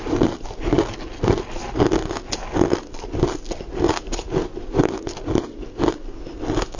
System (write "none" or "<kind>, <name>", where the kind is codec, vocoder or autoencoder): none